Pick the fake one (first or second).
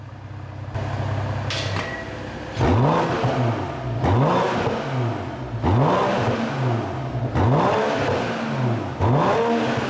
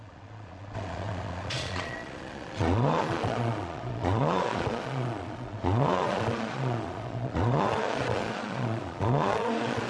second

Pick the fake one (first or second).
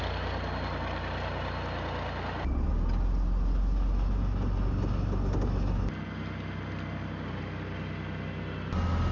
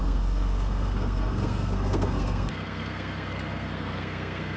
second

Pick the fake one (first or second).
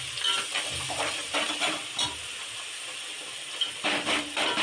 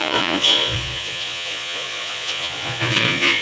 second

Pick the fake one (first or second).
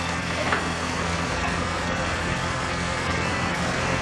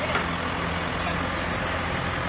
first